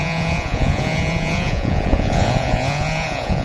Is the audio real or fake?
fake